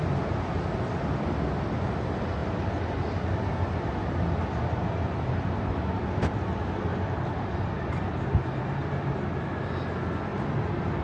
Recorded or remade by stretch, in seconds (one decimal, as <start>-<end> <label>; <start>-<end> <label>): 0.0-11.0 recorded